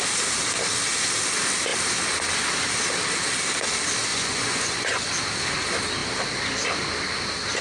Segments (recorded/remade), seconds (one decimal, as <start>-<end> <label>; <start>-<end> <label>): 0.0-4.1 recorded; 4.1-5.1 remade; 5.1-7.6 recorded